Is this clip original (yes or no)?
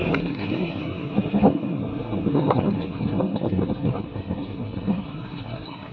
no